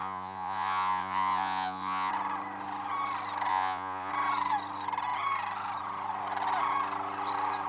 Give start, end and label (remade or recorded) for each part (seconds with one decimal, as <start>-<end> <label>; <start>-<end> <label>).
0.0-2.1 remade; 2.1-3.5 recorded; 3.5-4.1 remade; 4.1-7.7 recorded

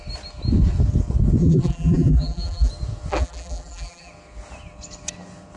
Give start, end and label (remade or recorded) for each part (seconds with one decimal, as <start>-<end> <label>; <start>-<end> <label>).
0.0-1.4 recorded; 1.4-2.7 remade; 2.7-3.1 recorded; 3.1-4.1 remade; 4.1-5.6 recorded

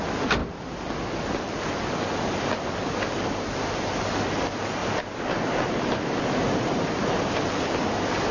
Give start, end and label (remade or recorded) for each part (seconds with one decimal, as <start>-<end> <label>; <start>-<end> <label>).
0.0-4.8 recorded; 4.8-7.3 remade; 7.3-8.3 recorded

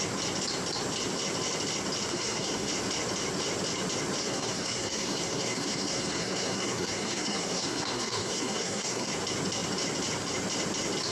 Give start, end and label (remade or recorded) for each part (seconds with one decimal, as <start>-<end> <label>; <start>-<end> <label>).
0.0-2.1 recorded; 2.1-2.7 remade; 2.7-4.2 recorded; 4.2-9.1 remade; 9.1-11.1 recorded